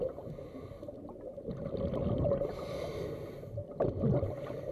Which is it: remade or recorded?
recorded